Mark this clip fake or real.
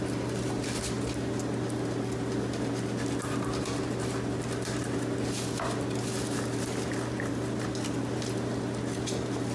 real